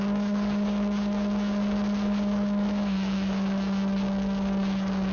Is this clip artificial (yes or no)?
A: yes